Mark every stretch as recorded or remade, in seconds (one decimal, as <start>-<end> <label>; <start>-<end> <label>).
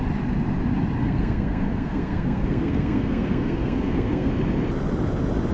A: 0.0-1.0 recorded; 1.0-4.3 remade; 4.3-5.5 recorded